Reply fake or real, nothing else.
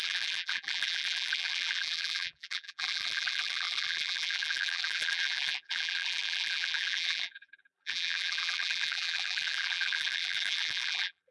fake